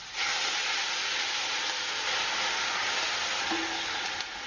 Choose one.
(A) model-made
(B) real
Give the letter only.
B